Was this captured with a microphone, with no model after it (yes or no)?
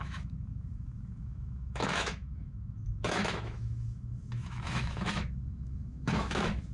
no